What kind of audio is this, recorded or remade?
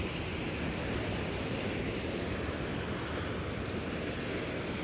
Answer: recorded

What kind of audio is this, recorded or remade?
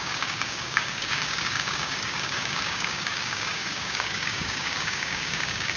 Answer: remade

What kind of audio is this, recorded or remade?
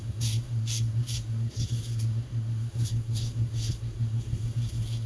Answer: remade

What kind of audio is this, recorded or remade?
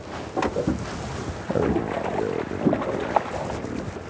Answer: recorded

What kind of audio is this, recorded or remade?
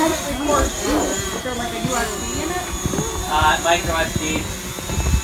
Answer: recorded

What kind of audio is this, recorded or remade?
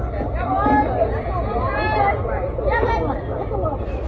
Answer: recorded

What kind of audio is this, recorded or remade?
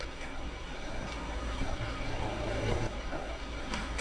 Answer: remade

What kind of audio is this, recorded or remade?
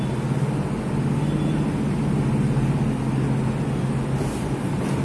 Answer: recorded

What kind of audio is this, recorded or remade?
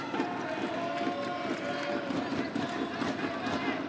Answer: recorded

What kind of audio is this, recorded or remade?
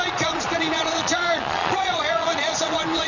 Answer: remade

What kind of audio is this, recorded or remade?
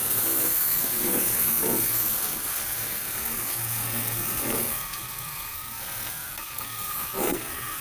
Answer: remade